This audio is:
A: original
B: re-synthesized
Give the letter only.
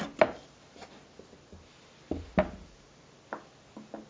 A